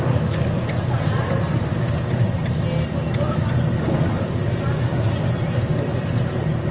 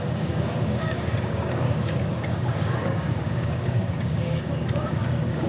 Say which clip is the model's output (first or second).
second